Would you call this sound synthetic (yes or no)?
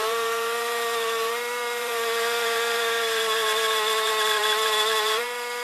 yes